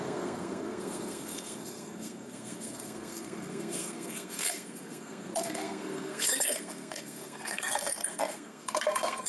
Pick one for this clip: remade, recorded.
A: remade